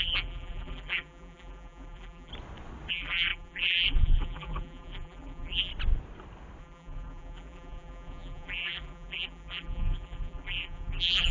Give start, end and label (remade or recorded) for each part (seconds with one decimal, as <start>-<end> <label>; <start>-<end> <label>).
0.0-2.3 remade; 2.3-2.9 recorded; 2.9-5.7 remade; 5.7-6.6 recorded; 6.6-11.3 remade